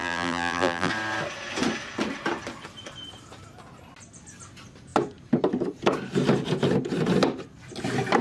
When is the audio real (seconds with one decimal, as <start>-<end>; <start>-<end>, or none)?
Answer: 0.9-8.2